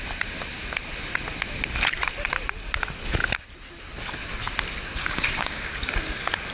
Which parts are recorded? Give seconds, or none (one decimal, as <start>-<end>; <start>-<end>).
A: 0.0-5.0; 5.7-6.5